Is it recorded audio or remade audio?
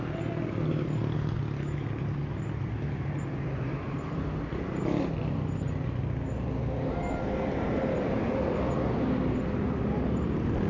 recorded